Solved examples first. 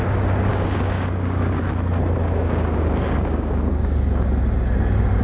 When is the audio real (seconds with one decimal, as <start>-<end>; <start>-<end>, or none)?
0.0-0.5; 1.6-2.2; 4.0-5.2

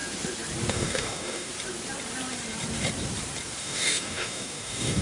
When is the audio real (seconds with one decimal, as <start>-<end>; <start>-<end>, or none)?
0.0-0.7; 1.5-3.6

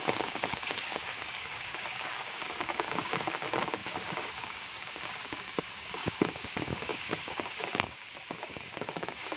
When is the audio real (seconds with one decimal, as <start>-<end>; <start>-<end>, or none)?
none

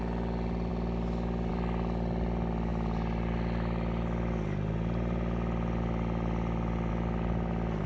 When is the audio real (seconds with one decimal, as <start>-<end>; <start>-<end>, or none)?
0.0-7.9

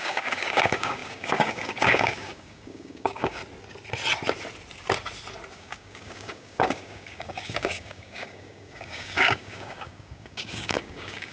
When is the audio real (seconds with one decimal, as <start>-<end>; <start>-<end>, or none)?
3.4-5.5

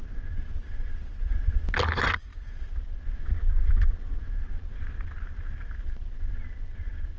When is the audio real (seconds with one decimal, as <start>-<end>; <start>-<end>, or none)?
0.0-7.2